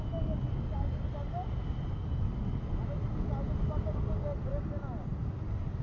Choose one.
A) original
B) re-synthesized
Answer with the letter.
A